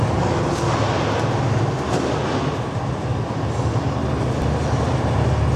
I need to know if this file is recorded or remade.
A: recorded